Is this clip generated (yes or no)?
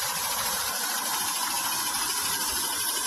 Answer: yes